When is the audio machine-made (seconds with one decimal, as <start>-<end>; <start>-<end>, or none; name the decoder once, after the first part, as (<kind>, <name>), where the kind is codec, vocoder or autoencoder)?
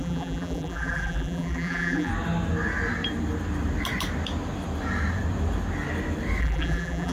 0.0-2.1 (vocoder, BigVGAN v2); 6.4-7.1